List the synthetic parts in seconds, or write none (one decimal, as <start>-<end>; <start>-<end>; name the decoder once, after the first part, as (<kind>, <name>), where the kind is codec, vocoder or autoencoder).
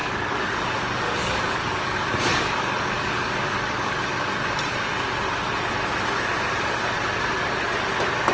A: 0.0-4.1 (codec, DAC)